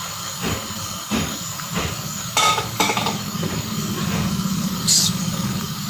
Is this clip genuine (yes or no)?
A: no